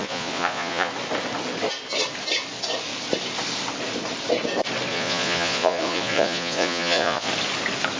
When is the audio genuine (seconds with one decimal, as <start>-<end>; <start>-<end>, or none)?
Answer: 0.9-4.9; 7.3-8.0